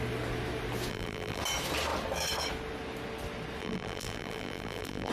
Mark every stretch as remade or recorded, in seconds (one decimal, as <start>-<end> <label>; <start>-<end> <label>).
0.0-0.9 recorded; 0.9-1.4 remade; 1.4-3.6 recorded; 3.6-5.1 remade